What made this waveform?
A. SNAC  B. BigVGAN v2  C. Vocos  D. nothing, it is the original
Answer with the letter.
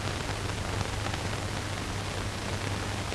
D